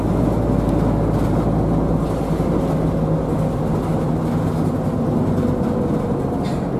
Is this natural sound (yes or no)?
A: yes